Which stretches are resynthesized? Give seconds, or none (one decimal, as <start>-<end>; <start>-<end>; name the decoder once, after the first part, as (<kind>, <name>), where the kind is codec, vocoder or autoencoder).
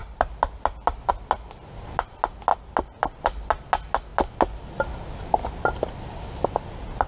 none